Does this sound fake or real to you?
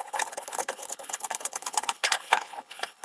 fake